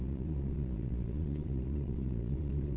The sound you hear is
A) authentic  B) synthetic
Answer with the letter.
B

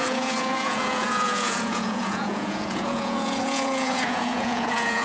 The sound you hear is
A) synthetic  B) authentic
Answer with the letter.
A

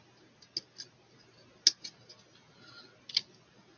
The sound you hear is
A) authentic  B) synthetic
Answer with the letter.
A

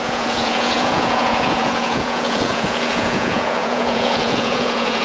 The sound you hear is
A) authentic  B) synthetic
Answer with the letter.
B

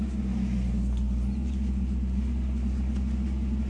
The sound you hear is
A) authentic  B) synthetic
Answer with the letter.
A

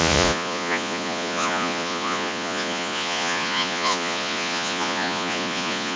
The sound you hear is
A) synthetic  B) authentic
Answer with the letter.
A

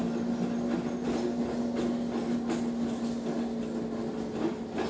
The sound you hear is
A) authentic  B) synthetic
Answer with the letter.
A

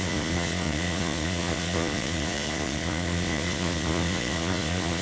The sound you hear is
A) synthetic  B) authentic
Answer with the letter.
A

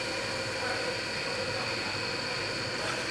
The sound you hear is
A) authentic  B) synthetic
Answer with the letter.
A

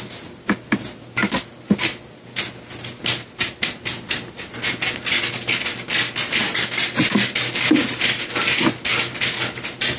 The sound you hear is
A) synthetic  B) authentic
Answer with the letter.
B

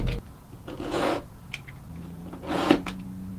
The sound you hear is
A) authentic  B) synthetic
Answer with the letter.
B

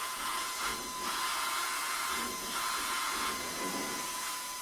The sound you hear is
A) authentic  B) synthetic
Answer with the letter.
B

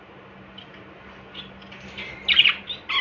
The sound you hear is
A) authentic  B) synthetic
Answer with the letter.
A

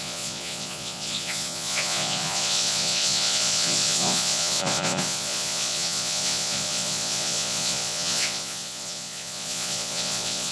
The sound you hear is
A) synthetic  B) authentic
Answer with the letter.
A